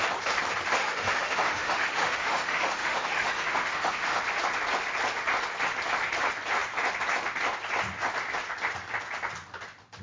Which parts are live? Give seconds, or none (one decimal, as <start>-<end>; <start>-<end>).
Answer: 0.0-0.8; 4.2-10.0

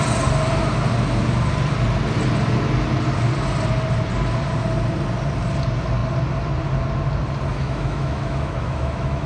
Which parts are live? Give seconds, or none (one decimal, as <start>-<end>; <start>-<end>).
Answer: 0.0-7.5